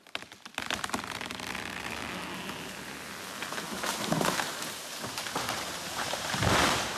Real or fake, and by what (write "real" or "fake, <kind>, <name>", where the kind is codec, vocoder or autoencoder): real